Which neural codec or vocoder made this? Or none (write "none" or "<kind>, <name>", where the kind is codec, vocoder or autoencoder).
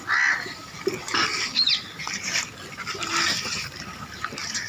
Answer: none